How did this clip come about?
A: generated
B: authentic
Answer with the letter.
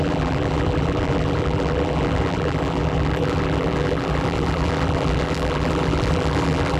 A